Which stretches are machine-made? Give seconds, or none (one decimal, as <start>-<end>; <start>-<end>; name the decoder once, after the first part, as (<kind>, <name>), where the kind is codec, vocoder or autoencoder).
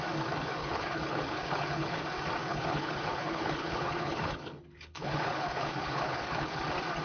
0.6-2.0 (codec, HILCodec); 2.4-6.6